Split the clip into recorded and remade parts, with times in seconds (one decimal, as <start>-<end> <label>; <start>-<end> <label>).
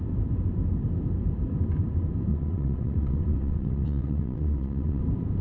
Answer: 0.0-2.3 recorded; 2.3-5.0 remade; 5.0-5.4 recorded